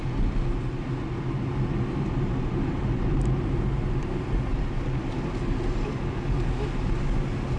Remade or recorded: recorded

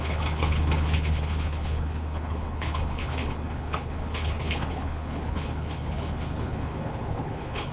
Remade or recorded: remade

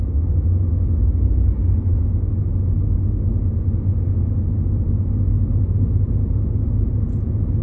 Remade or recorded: recorded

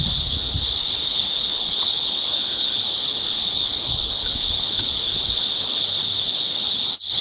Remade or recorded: remade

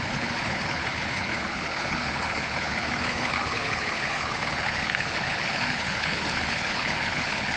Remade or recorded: remade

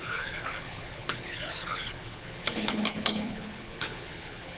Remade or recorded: remade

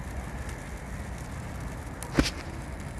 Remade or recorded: recorded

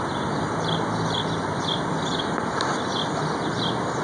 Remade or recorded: recorded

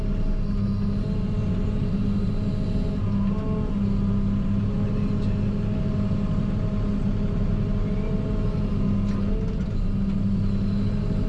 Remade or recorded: recorded